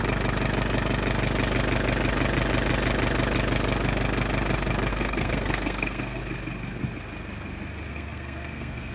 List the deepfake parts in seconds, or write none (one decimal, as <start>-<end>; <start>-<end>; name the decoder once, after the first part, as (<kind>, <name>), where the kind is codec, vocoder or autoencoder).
4.9-6.2 (codec, SNAC); 7.9-8.9